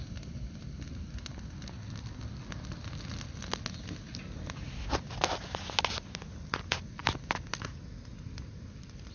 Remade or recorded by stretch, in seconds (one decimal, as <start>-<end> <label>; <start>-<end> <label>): 0.0-9.1 recorded